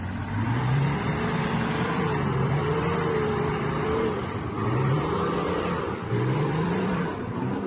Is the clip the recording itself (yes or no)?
no